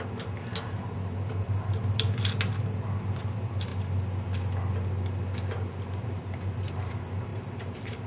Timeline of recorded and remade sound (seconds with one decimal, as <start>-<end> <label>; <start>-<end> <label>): 0.0-7.3 recorded; 7.3-8.1 remade